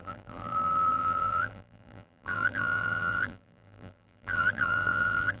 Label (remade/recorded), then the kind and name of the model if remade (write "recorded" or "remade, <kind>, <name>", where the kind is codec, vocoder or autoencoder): remade, vocoder, BigVGAN v2